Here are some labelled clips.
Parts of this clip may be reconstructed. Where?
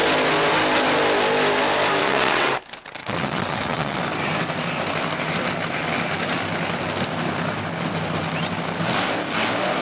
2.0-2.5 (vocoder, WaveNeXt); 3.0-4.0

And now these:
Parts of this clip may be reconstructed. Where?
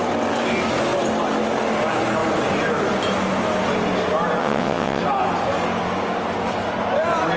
4.4-5.0 (vocoder, WaveNeXt)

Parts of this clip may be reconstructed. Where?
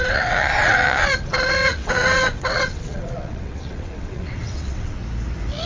0.0-5.0 (vocoder, WaveNeXt)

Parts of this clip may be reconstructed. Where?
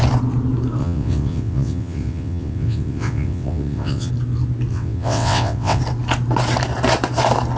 0.8-4.1 (vocoder, WaveNeXt); 4.7-5.8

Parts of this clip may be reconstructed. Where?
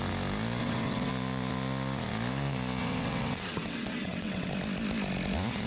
0.6-1.1 (vocoder, WaveNeXt); 2.8-4.5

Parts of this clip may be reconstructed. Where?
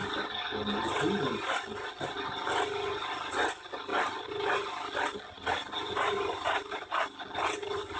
none